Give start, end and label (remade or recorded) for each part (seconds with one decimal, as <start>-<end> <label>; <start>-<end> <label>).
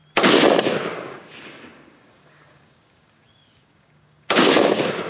0.0-0.9 recorded; 0.9-5.1 remade